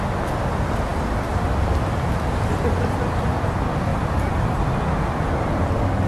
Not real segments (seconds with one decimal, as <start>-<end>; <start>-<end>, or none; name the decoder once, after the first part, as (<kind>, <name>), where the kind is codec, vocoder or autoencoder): 3.9-4.6 (vocoder, BigVGAN v2)